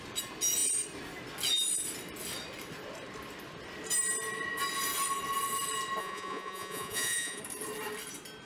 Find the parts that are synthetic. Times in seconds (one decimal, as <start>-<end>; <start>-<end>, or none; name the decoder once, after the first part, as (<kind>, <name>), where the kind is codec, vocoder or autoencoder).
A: 6.0-7.4 (vocoder, Vocos)